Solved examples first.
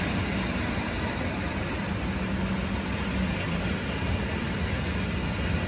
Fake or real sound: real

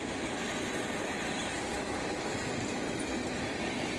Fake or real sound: real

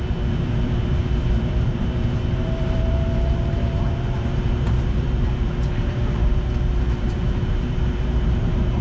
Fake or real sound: fake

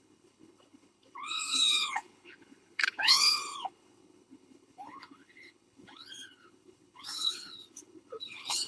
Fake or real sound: fake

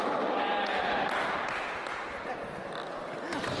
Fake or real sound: real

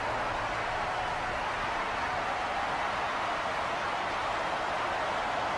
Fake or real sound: real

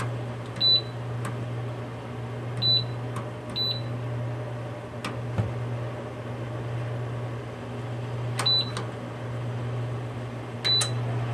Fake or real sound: real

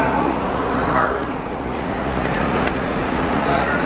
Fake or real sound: fake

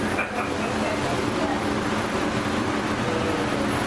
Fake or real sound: real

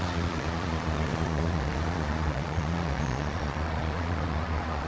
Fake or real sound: fake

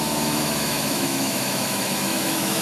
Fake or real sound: fake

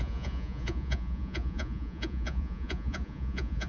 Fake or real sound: fake